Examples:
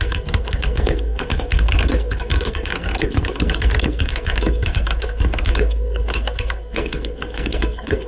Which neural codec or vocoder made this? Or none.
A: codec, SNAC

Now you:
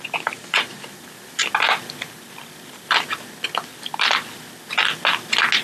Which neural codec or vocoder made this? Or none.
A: none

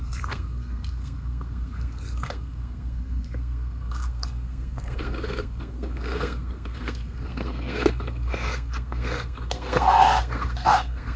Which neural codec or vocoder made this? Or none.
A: codec, SNAC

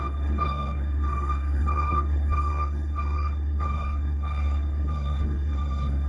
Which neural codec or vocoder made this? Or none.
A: codec, SNAC